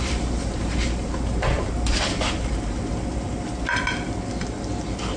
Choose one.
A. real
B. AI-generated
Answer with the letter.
A